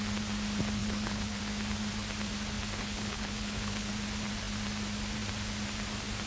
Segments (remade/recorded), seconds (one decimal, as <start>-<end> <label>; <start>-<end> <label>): 0.0-0.8 recorded; 0.8-1.4 remade; 1.4-2.8 recorded; 2.8-3.9 remade; 3.9-6.3 recorded